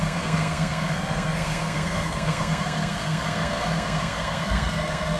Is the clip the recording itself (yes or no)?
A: no